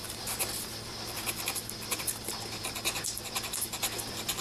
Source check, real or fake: real